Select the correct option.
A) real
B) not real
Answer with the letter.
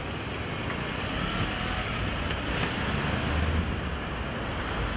A